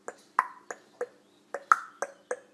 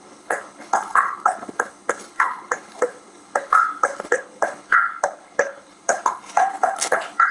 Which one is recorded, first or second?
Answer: first